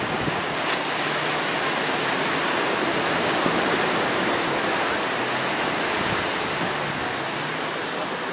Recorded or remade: recorded